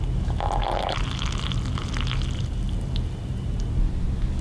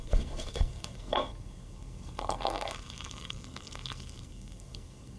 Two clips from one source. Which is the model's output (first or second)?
second